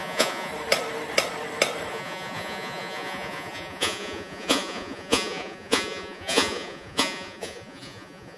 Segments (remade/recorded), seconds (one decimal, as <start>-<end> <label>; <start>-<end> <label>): 0.0-0.5 remade; 0.5-1.9 recorded; 1.9-8.4 remade